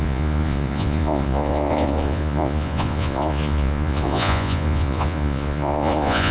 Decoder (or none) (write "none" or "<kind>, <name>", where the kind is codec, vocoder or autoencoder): vocoder, Vocos